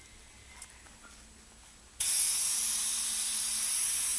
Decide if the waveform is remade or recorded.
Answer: recorded